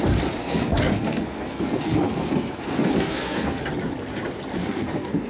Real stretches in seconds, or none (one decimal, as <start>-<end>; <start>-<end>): 0.0-0.4; 3.6-4.6